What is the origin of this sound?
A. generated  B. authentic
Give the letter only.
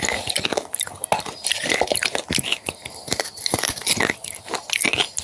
B